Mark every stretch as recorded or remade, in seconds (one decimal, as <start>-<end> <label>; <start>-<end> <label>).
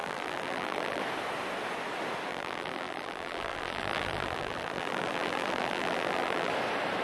0.0-1.0 remade; 1.0-2.3 recorded; 2.3-6.5 remade; 6.5-7.0 recorded